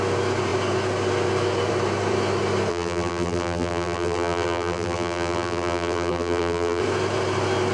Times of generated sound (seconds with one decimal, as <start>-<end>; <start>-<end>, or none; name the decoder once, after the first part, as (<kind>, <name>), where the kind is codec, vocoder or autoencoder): 2.7-6.8 (vocoder, BigVGAN v2)